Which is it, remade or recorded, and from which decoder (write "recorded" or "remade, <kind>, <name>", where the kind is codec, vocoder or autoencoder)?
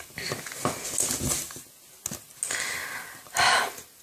recorded